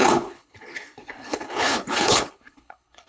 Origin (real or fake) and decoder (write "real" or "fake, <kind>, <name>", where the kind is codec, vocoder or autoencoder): fake, codec, HILCodec